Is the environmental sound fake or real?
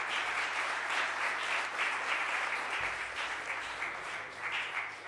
fake